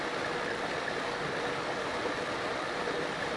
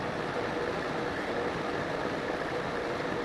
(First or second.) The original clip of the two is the second